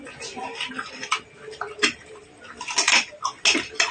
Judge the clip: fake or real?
real